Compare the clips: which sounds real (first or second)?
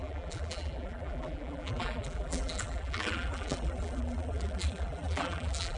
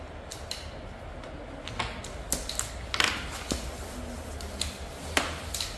second